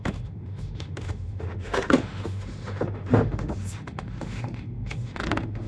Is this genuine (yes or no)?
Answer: no